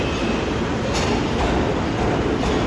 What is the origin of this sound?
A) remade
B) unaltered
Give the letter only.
B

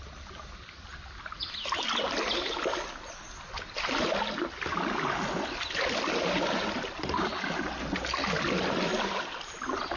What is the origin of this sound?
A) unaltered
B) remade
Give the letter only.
A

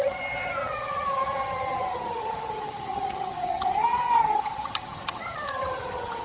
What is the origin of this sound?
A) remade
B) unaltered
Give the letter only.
A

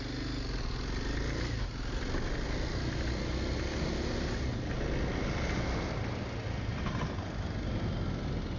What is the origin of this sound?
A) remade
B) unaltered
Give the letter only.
B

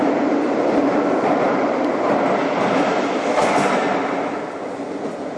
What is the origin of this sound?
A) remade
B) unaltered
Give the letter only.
B